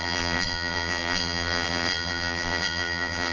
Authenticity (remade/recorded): remade